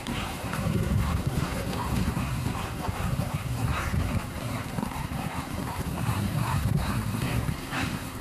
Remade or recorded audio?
remade